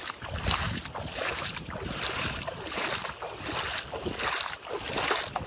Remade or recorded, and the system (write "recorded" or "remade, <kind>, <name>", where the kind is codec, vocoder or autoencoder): recorded